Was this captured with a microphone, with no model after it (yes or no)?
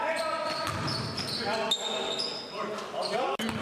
yes